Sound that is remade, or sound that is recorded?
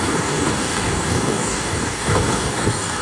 remade